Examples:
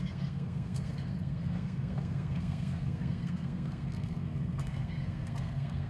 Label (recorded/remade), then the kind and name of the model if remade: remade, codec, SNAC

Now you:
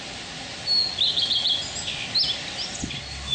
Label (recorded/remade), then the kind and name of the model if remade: recorded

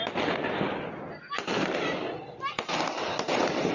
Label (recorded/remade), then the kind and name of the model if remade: recorded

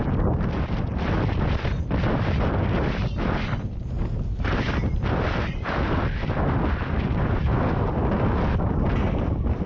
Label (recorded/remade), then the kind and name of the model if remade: recorded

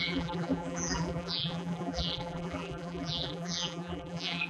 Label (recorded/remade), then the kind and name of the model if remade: remade, vocoder, BigVGAN v2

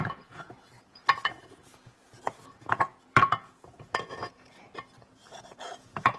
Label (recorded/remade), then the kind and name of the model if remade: remade, vocoder, Vocos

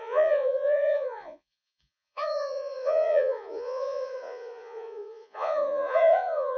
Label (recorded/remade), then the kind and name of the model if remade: remade, vocoder, Vocos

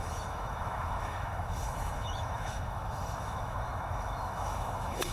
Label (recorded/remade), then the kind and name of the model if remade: remade, autoencoder, DAC-VAE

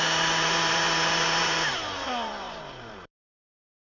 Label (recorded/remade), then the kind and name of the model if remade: remade, vocoder, BigVGAN v2